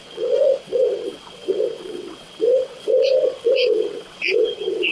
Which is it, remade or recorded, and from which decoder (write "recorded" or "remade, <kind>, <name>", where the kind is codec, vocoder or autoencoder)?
remade, vocoder, WaveNeXt